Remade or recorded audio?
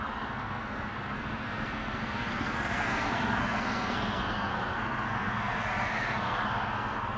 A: remade